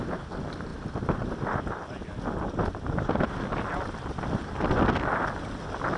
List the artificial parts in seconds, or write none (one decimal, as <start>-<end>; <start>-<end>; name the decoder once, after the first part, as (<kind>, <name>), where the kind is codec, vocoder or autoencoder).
0.7-4.3 (vocoder, BigVGAN v2)